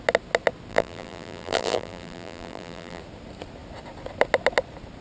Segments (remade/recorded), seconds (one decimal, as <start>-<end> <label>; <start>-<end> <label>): 0.0-0.7 recorded; 0.7-3.0 remade; 3.0-5.0 recorded

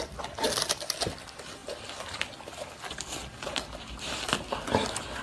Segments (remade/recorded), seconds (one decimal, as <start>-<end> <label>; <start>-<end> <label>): 0.0-5.2 recorded

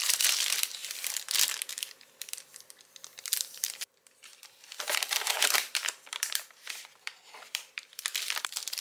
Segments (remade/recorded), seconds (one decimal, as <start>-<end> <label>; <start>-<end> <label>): 0.0-0.8 remade; 0.8-1.7 recorded; 1.7-8.8 remade

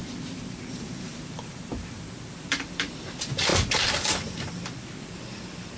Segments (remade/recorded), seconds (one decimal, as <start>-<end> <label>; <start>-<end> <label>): 0.0-0.7 recorded; 0.7-1.7 remade; 1.7-2.3 recorded; 2.3-5.8 remade

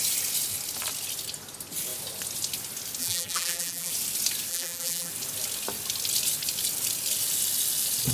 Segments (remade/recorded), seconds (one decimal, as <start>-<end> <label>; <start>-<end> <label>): 0.0-3.0 recorded; 3.0-3.9 remade; 3.9-4.5 recorded; 4.5-5.1 remade; 5.1-8.1 recorded

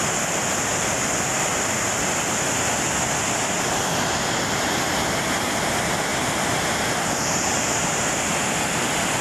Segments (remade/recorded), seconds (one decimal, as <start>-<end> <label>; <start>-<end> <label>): 0.0-6.1 recorded; 6.1-8.1 remade; 8.1-9.2 recorded

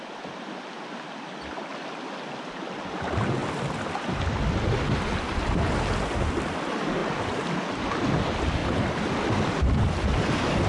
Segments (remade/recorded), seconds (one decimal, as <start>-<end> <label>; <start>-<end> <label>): 0.0-8.6 recorded; 8.6-9.9 remade; 9.9-10.7 recorded